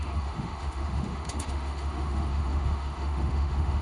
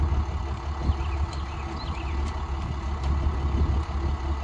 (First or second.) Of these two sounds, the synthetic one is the first